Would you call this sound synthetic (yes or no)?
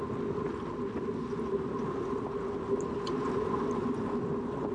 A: no